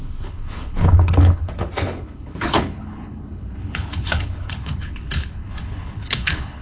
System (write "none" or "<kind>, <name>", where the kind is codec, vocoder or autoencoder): codec, HILCodec